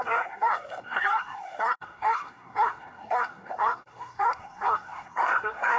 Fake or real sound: fake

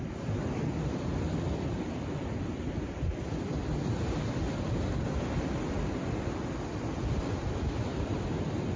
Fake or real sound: real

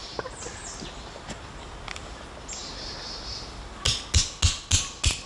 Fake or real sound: real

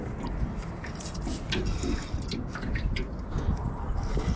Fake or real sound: real